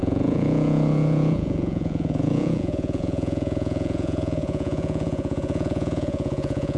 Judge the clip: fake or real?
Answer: fake